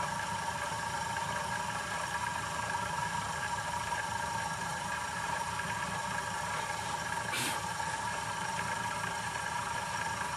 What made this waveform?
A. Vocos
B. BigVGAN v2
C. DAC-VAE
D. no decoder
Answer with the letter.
B